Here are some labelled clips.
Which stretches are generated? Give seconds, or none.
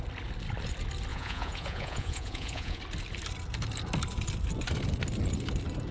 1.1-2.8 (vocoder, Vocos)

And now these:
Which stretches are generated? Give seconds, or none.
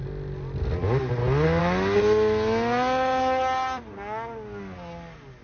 none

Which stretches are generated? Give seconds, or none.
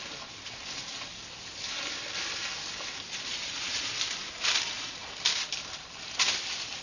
none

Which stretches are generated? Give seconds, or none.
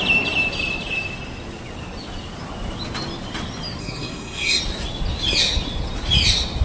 3.8-4.6 (codec, SNAC)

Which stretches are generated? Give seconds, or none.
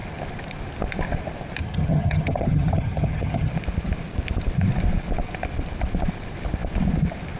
1.6-3.5 (vocoder, HiFi-GAN)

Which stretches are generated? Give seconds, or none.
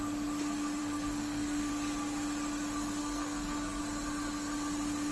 0.8-1.7 (codec, SNAC); 3.0-3.8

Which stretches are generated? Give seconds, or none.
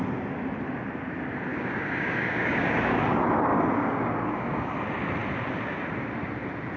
1.5-3.0 (codec, DAC); 3.5-4.7